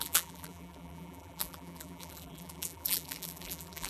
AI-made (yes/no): yes